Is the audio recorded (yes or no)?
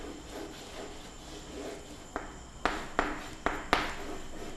yes